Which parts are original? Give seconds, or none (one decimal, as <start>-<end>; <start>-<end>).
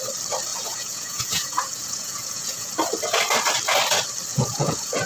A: 0.0-0.5; 2.7-4.3